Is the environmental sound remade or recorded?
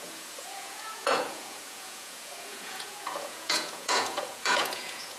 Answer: remade